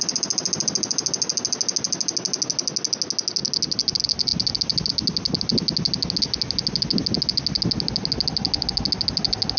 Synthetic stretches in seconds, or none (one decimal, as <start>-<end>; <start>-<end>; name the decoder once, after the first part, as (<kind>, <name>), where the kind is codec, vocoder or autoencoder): none